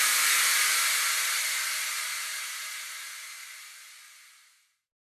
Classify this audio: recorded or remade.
recorded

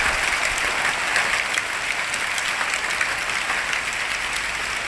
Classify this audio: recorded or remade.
recorded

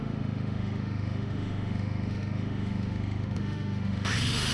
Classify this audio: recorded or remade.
remade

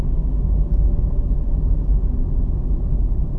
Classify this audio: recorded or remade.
recorded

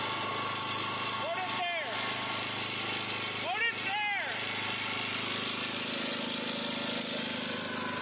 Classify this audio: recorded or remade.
recorded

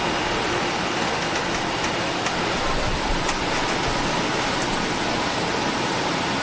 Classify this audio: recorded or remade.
recorded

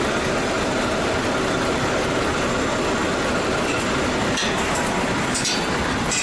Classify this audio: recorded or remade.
recorded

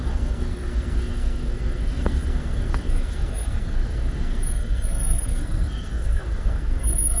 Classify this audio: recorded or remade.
remade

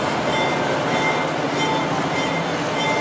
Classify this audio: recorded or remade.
recorded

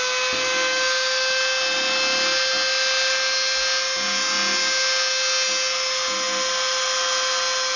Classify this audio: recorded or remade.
recorded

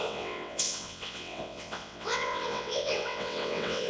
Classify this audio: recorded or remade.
remade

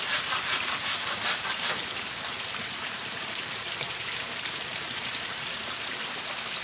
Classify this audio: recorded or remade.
remade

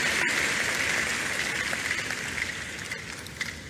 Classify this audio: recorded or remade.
recorded